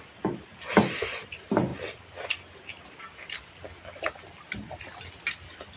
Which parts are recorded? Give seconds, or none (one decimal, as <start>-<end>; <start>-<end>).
0.0-5.8